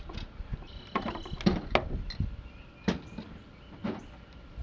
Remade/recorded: recorded